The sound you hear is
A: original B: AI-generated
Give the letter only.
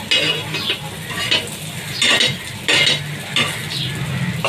A